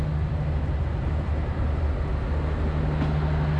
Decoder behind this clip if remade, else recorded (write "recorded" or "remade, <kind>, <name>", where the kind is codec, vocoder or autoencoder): recorded